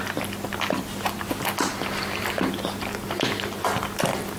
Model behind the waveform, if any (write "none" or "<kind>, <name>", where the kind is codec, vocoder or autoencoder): none